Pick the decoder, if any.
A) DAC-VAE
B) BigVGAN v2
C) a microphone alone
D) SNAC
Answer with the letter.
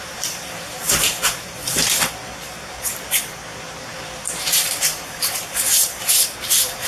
B